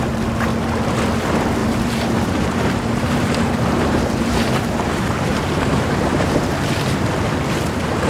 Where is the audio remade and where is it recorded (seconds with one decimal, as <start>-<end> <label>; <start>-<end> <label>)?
0.0-1.6 recorded; 1.6-6.5 remade; 6.5-8.1 recorded